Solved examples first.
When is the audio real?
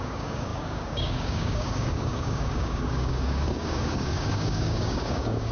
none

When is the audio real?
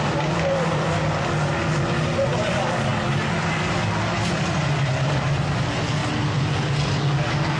0.0-7.6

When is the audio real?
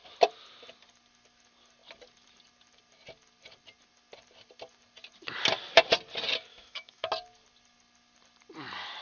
0.0-6.5; 7.1-9.0